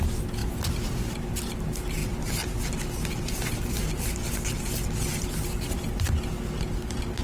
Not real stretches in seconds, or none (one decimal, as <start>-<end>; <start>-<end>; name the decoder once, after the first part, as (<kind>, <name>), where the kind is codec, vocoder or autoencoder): none